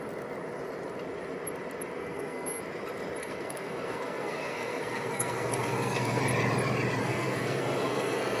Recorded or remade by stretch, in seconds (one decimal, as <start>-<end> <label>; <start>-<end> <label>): 0.0-2.0 recorded; 2.0-2.6 remade; 2.6-3.2 recorded; 3.2-6.2 remade; 6.2-7.0 recorded; 7.0-8.4 remade